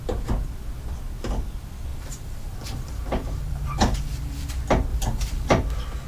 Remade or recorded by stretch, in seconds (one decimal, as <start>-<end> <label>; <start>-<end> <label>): 0.0-1.9 recorded; 1.9-4.5 remade; 4.5-4.9 recorded; 4.9-5.5 remade; 5.5-6.1 recorded